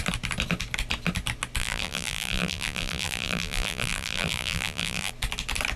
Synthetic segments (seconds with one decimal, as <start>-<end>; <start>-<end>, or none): 1.6-5.1